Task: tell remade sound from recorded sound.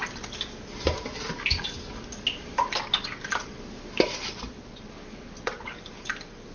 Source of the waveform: recorded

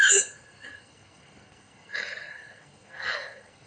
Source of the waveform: remade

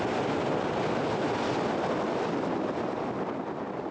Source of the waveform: recorded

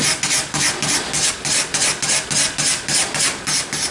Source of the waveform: recorded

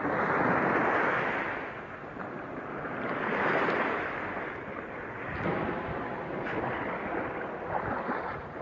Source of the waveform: recorded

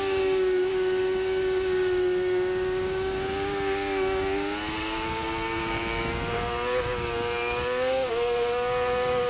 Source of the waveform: remade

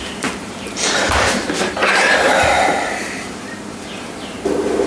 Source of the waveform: remade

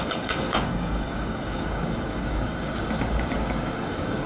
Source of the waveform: remade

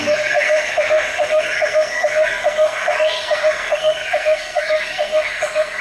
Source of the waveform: remade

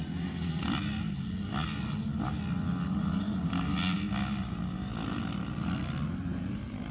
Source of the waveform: recorded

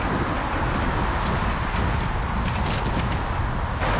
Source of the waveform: recorded